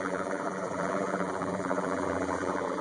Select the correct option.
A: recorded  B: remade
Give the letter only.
B